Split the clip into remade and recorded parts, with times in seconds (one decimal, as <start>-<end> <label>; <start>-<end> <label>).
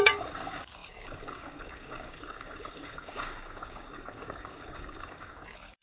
0.0-5.8 remade